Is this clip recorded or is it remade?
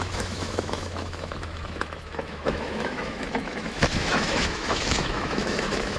remade